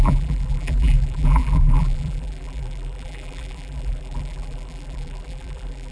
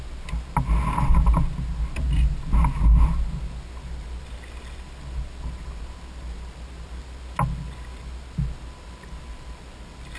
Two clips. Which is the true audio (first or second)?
second